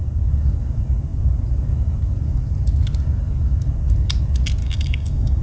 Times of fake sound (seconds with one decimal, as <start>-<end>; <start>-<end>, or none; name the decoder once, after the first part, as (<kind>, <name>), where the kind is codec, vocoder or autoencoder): 4.6-5.4 (codec, DAC)